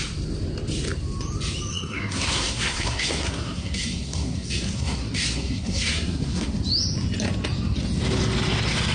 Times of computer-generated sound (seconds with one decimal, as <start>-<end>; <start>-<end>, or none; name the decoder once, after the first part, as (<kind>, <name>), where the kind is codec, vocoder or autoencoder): 1.7-6.6 (codec, SNAC)